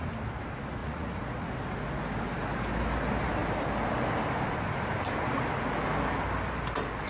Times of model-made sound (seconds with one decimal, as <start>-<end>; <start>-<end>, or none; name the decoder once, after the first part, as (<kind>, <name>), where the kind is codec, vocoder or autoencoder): 0.8-1.5 (vocoder, Vocos)